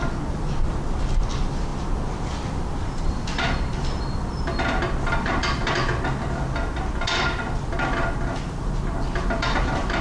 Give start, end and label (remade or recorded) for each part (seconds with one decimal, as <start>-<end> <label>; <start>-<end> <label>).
0.0-10.0 recorded